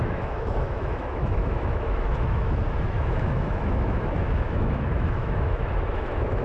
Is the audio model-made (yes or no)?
yes